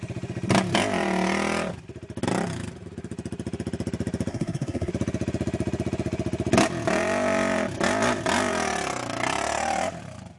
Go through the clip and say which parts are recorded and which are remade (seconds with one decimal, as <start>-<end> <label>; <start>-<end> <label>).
0.0-4.3 recorded; 4.3-4.9 remade; 4.9-10.4 recorded